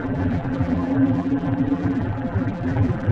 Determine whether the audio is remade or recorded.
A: remade